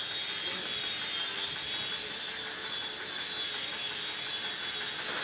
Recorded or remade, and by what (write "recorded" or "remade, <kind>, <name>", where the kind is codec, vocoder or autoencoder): recorded